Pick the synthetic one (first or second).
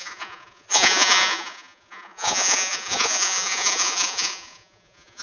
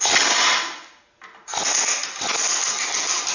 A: first